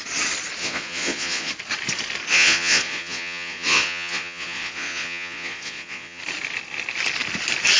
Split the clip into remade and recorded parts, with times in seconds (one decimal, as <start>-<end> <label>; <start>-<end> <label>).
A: 0.0-0.6 recorded; 0.6-1.5 remade; 1.5-2.3 recorded; 2.3-6.2 remade; 6.2-7.8 recorded